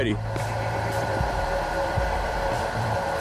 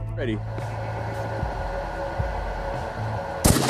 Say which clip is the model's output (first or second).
first